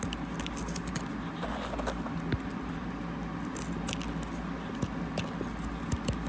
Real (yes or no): yes